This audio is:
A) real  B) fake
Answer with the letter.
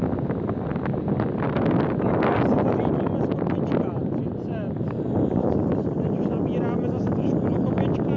A